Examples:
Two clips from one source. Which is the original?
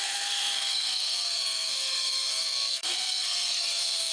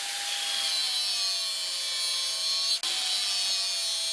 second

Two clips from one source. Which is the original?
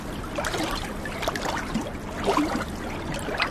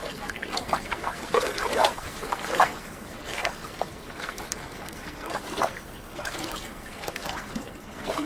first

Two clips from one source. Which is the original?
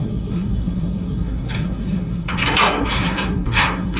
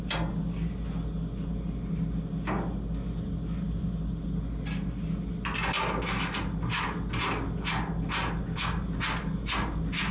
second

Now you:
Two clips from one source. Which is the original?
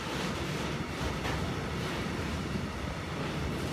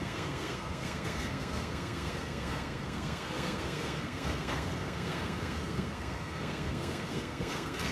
first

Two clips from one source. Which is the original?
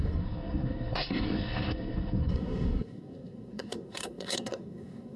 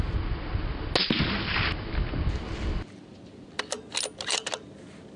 second